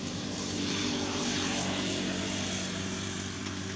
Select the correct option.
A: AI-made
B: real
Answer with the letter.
A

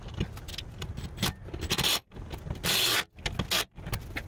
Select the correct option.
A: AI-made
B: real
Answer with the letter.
B